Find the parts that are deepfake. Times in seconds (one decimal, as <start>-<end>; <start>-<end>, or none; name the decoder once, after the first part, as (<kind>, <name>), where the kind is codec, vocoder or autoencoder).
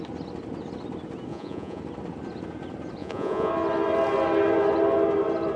1.3-1.8 (vocoder, Vocos); 3.0-3.5